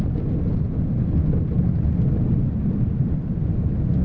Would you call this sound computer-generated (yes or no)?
no